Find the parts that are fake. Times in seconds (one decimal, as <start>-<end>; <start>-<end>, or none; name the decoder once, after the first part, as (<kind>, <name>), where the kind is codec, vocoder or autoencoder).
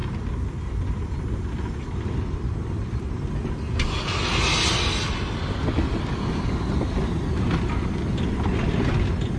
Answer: none